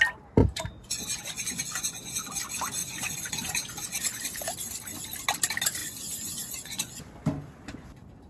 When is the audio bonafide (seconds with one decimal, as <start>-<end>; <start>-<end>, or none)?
0.0-0.4; 2.4-2.8; 4.2-5.8; 7.1-8.3